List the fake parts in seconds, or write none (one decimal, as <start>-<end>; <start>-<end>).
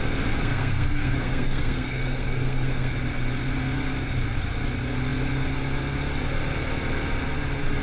0.4-2.9